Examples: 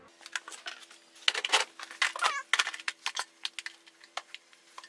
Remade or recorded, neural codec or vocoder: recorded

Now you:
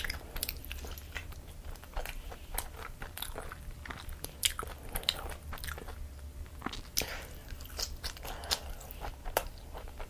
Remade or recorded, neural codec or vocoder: recorded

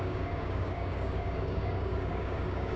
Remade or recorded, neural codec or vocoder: remade, codec, DAC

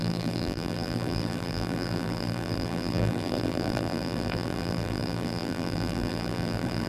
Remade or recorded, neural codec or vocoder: remade, vocoder, BigVGAN v2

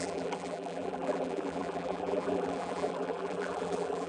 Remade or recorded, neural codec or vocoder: remade, vocoder, BigVGAN v2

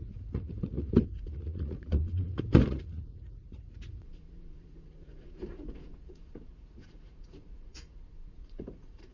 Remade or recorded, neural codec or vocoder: remade, vocoder, Vocos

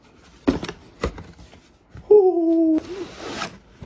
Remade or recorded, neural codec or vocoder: recorded